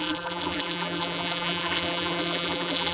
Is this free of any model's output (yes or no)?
no